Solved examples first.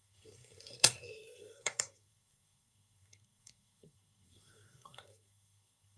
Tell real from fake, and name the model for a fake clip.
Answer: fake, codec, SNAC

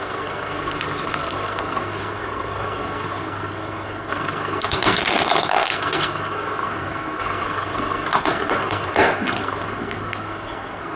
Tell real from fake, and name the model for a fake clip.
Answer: fake, codec, SNAC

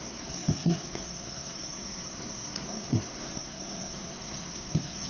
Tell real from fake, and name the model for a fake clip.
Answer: fake, codec, SNAC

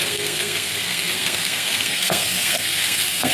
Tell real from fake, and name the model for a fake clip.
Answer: fake, codec, SNAC